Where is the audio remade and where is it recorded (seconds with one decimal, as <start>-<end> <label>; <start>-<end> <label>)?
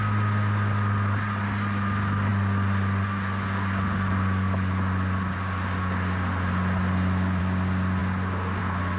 0.0-9.0 recorded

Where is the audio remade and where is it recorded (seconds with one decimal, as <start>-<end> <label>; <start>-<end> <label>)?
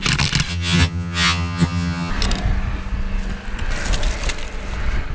0.0-0.5 recorded; 0.5-2.1 remade; 2.1-5.1 recorded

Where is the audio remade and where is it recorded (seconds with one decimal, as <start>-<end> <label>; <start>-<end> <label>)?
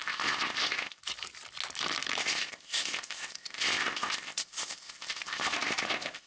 0.0-1.0 remade; 1.0-2.2 recorded; 2.2-6.3 remade